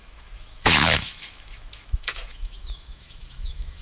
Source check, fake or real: fake